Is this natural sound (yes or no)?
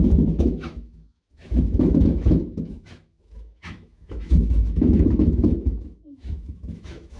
no